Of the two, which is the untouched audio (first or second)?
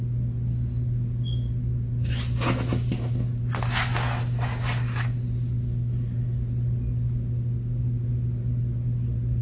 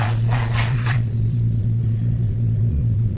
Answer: first